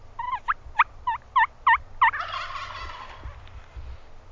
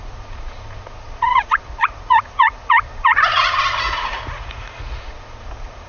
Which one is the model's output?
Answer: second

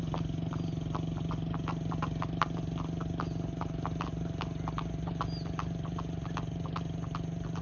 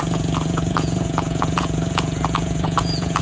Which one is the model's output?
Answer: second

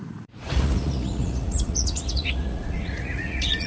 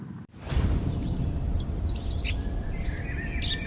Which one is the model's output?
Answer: first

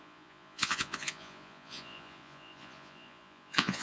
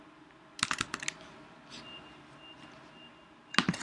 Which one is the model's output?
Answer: first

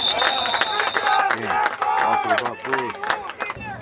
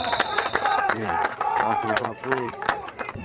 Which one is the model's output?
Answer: second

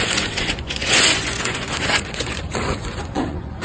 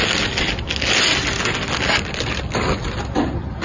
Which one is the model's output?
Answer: first